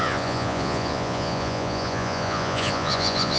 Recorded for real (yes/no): no